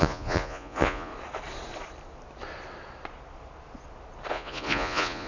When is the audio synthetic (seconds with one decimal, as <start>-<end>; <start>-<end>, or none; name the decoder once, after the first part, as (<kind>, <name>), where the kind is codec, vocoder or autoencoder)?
0.0-1.1 (vocoder, Vocos); 4.3-5.3